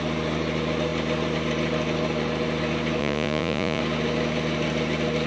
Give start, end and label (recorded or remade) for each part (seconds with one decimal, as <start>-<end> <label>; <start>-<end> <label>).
0.0-3.0 recorded; 3.0-3.8 remade; 3.8-5.3 recorded